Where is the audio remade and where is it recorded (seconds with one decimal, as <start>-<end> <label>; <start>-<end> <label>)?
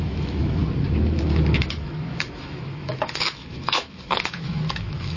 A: 0.0-0.6 remade; 0.6-1.8 recorded; 1.8-5.2 remade